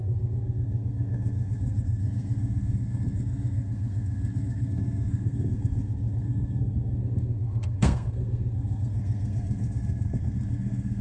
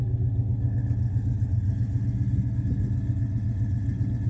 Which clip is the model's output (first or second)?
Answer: first